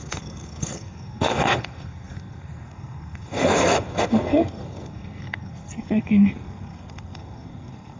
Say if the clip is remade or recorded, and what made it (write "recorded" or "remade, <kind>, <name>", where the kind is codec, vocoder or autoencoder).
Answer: remade, codec, SNAC